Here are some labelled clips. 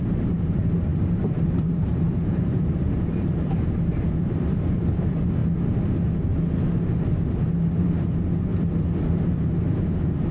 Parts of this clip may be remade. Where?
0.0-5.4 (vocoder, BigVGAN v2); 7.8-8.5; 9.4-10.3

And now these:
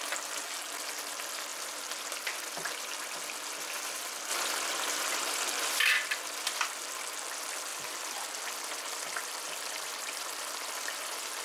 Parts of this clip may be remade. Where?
4.3-5.8 (vocoder, BigVGAN v2); 7.7-11.4

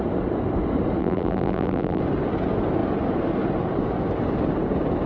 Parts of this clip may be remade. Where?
1.0-2.0 (vocoder, BigVGAN v2)